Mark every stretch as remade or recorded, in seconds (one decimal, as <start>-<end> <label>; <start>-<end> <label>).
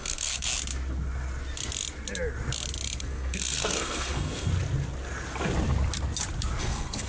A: 0.0-0.5 remade; 0.5-3.0 recorded; 3.0-4.5 remade; 4.5-6.6 recorded; 6.6-7.1 remade